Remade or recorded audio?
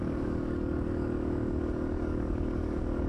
remade